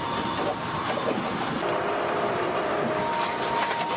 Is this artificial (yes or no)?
no